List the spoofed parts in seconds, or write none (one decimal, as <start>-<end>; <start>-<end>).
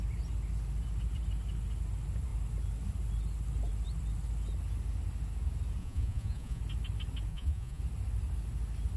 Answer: 5.8-6.6; 7.3-7.8